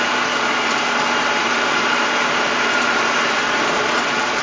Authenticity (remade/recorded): remade